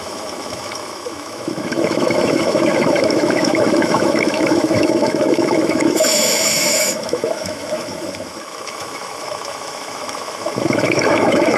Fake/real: fake